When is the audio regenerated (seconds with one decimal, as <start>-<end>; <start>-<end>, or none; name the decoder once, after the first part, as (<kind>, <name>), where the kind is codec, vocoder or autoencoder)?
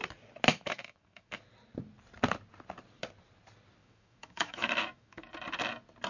0.5-1.4 (autoencoder, DAC-VAE); 3.8-5.3